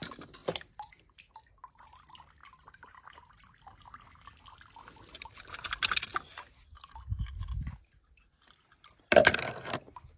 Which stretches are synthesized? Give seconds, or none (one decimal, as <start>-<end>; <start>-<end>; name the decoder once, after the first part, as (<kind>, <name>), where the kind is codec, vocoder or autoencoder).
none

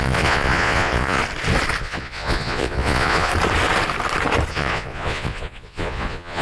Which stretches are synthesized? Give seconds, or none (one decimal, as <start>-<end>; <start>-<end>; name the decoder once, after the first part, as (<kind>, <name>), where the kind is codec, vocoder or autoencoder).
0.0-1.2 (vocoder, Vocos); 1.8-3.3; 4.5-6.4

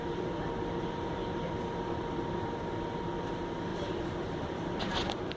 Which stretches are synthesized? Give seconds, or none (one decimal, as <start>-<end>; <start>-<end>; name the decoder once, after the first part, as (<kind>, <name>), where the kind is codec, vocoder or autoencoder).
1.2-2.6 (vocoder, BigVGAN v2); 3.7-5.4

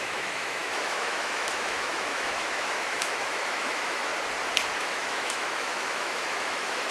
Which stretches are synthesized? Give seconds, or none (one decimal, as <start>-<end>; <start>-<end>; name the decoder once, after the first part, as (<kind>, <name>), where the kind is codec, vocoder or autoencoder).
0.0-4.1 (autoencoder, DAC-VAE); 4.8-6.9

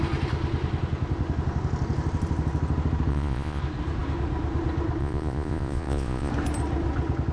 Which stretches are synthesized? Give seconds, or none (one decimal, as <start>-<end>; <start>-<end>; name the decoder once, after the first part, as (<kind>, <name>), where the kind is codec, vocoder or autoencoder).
3.1-3.6 (vocoder, Vocos); 5.0-6.3